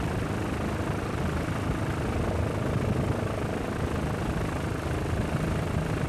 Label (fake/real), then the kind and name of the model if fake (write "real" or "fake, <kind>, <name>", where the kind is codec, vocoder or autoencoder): real